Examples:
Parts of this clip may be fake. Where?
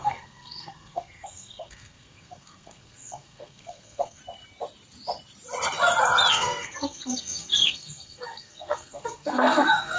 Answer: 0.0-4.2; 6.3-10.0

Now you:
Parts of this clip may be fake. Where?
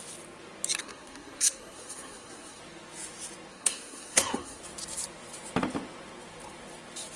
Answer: 0.8-2.6; 3.5-4.6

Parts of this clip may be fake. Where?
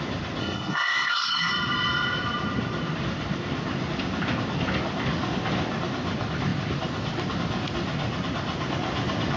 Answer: 0.4-1.5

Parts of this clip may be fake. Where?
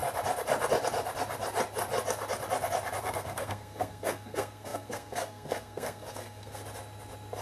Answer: 3.0-6.6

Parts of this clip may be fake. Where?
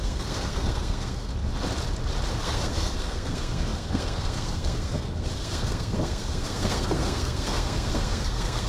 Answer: 0.0-1.3; 2.4-8.7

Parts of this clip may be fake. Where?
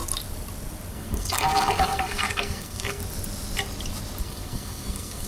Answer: 0.9-3.0; 4.2-5.3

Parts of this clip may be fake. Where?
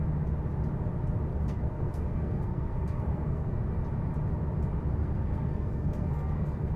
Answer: 1.3-3.6; 5.0-6.8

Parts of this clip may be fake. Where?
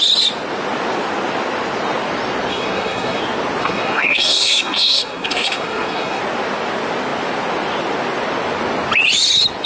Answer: 2.5-3.2; 3.6-6.2